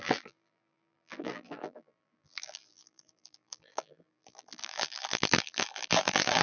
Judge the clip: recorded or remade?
remade